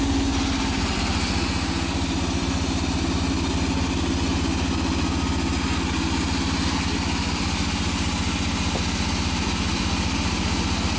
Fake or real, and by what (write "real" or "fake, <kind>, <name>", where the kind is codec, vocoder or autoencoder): real